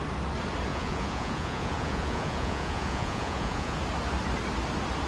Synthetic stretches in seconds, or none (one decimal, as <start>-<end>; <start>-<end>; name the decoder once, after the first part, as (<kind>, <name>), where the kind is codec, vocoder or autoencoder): 0.7-3.8 (vocoder, Vocos)